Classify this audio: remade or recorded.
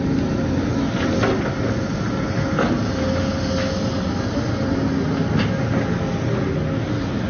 recorded